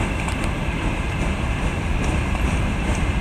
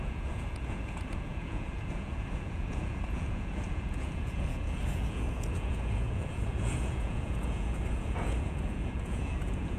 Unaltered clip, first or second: first